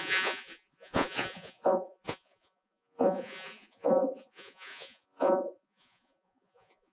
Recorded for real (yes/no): no